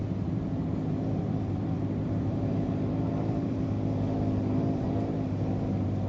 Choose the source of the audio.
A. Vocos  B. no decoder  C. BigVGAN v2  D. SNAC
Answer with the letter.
C